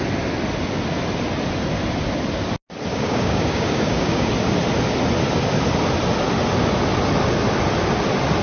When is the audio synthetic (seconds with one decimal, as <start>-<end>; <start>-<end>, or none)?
2.9-4.3